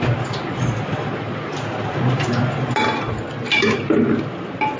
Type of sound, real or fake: real